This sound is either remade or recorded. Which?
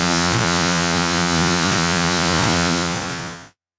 remade